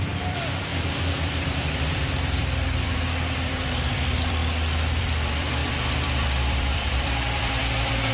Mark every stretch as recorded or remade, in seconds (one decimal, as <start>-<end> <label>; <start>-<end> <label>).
0.0-4.4 remade; 4.4-5.0 recorded; 5.0-8.1 remade